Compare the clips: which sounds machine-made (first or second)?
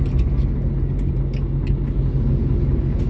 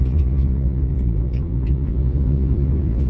second